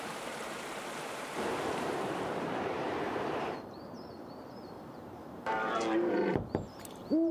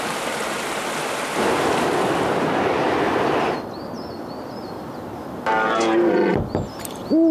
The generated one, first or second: first